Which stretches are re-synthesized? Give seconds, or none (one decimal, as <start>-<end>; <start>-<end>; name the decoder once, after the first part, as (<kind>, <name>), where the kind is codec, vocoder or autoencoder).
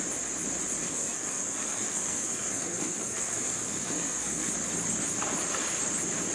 0.8-4.5 (codec, SNAC)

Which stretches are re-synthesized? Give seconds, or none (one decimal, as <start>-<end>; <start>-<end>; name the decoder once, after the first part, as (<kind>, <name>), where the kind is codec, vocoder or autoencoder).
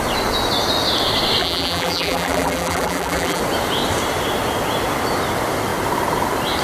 1.4-3.4 (vocoder, BigVGAN v2)